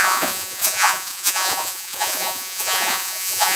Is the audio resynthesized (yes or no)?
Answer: yes